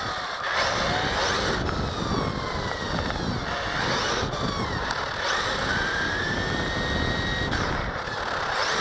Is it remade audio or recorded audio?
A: recorded